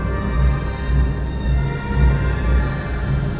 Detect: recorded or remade recorded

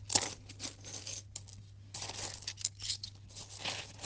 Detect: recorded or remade recorded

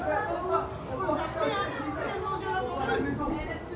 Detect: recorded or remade recorded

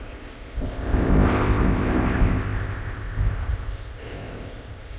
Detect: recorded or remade remade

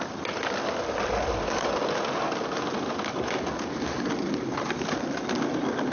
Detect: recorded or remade recorded